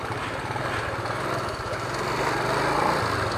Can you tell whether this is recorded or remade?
recorded